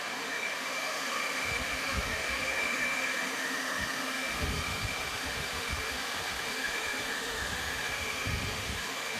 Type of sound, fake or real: fake